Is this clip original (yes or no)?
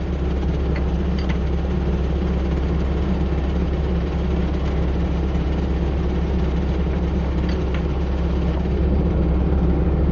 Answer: no